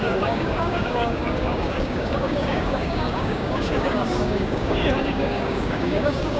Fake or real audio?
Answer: fake